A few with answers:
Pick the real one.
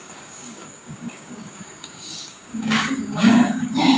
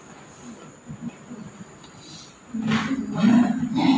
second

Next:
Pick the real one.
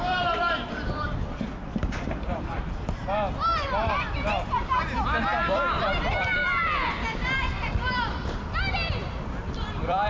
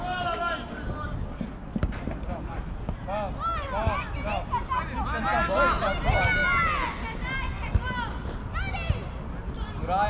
second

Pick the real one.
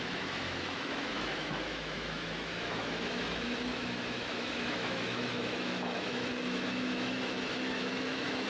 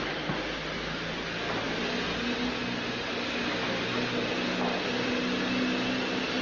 second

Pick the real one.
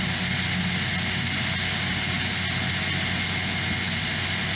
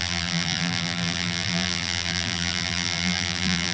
first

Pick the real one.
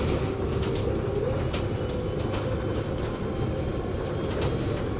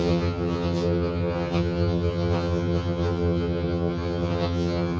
first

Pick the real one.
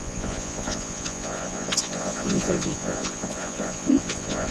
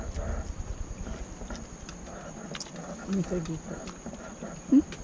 second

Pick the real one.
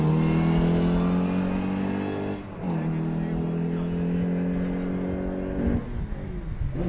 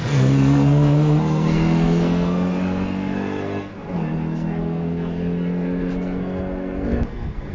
first